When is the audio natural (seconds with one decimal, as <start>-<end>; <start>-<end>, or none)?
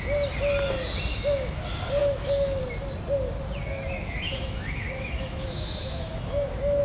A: 0.0-1.1; 1.6-2.0; 2.6-3.6